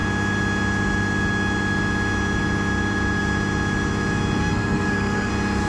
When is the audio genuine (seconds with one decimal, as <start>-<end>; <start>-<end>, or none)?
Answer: 0.0-4.4; 5.3-5.7